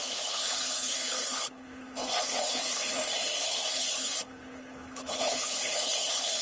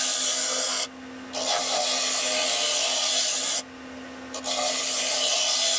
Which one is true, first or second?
second